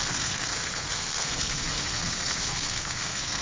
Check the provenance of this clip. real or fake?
fake